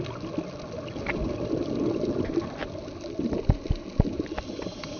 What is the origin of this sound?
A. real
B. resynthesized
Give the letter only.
A